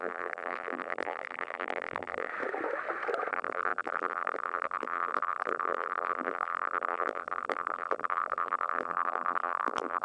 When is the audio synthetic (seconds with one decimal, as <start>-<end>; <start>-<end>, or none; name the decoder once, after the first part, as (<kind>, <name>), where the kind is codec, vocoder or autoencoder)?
0.0-2.3 (vocoder, BigVGAN v2); 3.3-10.0